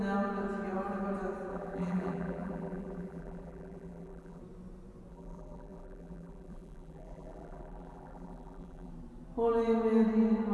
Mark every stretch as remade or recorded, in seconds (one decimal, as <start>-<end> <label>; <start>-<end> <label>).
0.0-1.5 recorded; 1.5-4.4 remade; 4.4-5.1 recorded; 5.1-8.9 remade; 8.9-10.5 recorded